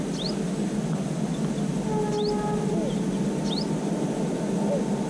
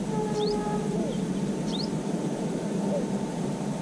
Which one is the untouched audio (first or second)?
first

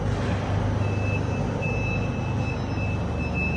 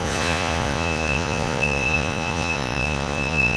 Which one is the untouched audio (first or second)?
first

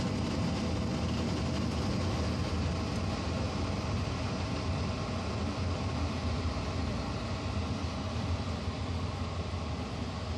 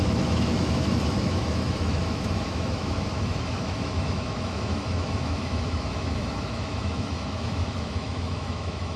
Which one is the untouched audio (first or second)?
first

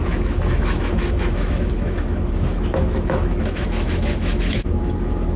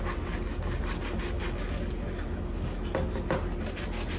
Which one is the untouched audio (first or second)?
second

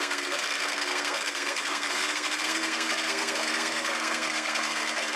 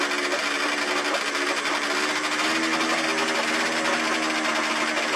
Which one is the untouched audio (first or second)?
second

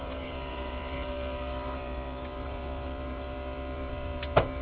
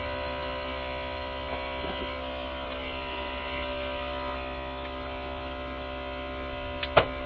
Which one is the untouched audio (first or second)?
second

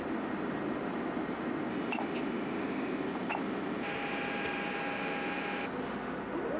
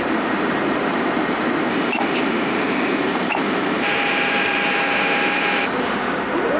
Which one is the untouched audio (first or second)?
first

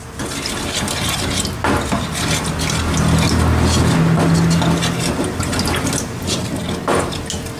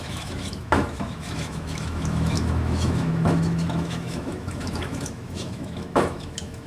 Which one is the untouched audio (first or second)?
first